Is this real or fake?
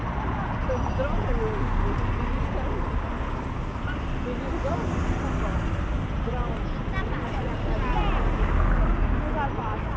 real